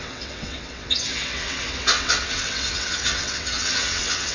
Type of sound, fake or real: fake